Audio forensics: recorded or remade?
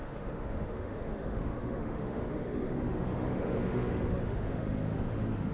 remade